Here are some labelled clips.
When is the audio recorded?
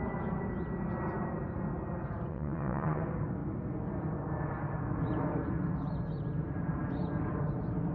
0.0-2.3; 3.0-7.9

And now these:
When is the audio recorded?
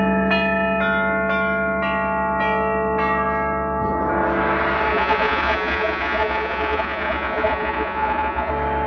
0.0-4.9; 8.5-8.9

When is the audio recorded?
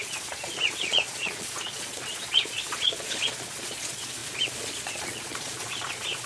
none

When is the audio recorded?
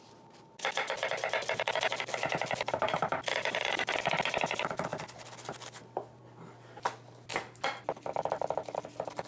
0.0-9.3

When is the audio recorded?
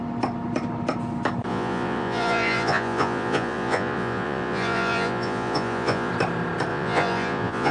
0.0-1.5; 6.1-6.7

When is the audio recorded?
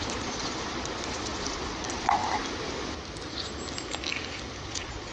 2.2-4.6